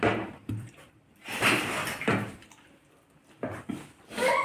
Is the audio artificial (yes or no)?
yes